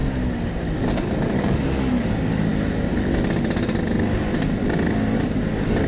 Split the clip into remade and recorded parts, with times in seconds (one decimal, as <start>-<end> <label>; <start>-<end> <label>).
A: 0.0-0.9 recorded; 0.9-2.5 remade; 2.5-5.5 recorded; 5.5-5.9 remade